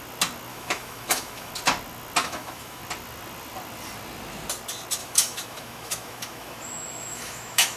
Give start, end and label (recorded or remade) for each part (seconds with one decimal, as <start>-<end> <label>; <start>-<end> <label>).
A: 0.0-0.5 recorded; 0.5-1.5 remade; 1.5-2.2 recorded; 2.2-2.8 remade; 2.8-5.0 recorded; 5.0-7.8 remade